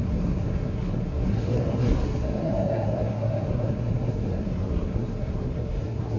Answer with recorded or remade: remade